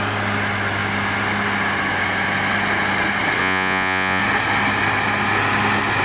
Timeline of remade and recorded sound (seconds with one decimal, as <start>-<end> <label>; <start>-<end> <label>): 0.0-3.4 recorded; 3.4-4.2 remade; 4.2-6.0 recorded